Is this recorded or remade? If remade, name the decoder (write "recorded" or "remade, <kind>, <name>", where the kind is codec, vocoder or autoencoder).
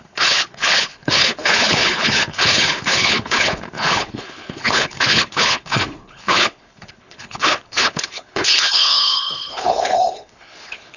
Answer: remade, codec, HILCodec